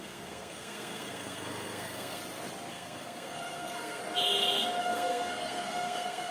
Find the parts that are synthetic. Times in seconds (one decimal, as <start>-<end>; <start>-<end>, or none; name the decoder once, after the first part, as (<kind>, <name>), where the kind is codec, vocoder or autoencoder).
0.0-2.2 (codec, SNAC); 2.7-4.0; 4.8-6.3